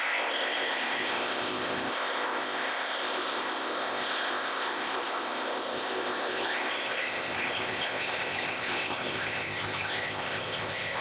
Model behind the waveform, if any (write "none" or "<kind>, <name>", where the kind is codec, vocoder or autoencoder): codec, ZipCodec